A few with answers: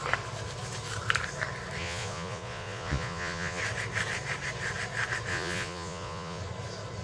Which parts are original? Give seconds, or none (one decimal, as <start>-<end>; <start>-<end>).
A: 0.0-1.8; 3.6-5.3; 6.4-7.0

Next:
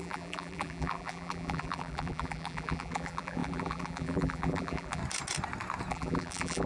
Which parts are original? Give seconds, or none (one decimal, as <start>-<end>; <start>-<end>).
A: 5.0-5.9

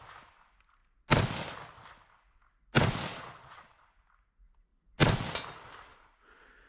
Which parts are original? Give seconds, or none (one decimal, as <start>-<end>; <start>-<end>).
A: 0.0-3.1; 3.9-6.7